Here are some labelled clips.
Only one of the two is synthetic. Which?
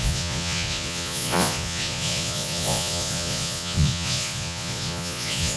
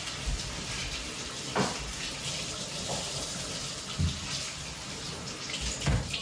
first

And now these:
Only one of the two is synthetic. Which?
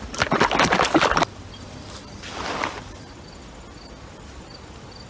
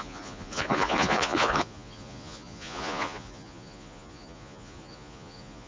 second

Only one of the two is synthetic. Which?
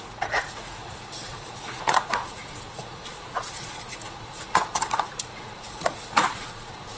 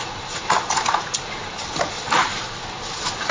first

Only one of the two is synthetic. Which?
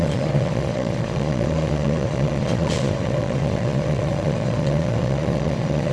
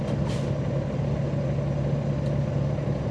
first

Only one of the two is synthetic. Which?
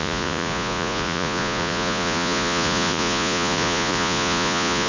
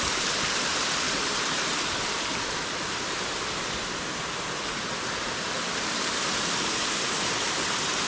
first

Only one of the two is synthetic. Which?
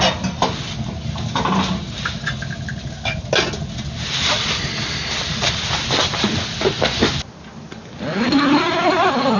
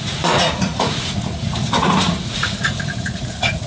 second